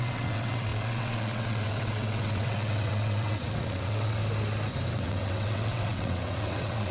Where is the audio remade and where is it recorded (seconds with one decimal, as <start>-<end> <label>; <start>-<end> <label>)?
0.0-4.2 remade; 4.2-4.9 recorded; 4.9-6.9 remade